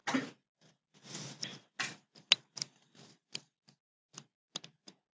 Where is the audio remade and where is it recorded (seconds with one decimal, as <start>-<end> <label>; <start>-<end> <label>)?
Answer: 0.0-5.2 recorded

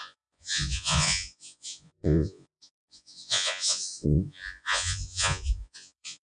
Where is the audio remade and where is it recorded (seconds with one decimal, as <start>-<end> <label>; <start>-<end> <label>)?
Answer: 0.0-6.2 remade

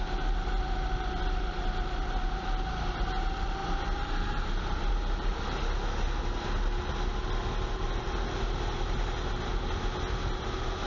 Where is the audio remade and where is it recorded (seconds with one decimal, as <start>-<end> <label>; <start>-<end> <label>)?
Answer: 0.0-10.9 recorded

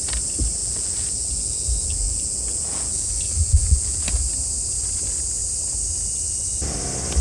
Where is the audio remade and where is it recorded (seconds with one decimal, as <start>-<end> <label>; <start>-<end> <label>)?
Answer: 0.0-0.6 recorded; 0.6-4.0 remade; 4.0-7.2 recorded

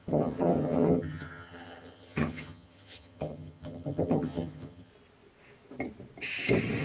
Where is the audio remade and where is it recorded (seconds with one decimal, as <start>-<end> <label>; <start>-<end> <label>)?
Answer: 0.0-4.9 remade; 4.9-6.8 recorded

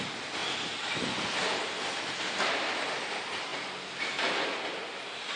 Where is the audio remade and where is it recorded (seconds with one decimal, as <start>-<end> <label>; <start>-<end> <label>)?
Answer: 0.0-5.4 recorded

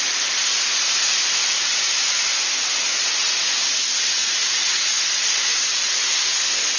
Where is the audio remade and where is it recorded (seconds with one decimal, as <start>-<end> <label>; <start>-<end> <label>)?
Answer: 0.0-1.4 recorded; 1.4-2.2 remade; 2.2-4.2 recorded; 4.2-5.7 remade; 5.7-6.8 recorded